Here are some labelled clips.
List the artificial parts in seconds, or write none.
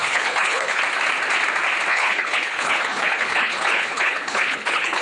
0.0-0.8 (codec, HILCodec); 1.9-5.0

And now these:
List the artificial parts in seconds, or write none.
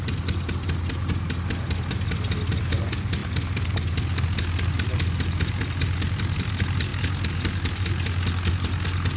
none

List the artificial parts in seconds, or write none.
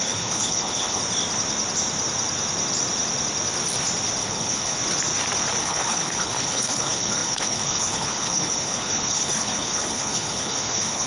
0.0-1.0 (codec, HILCodec); 4.2-4.8; 5.6-11.1